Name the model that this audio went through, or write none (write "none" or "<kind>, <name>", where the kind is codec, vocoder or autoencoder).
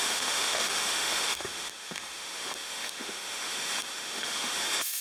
autoencoder, DAC-VAE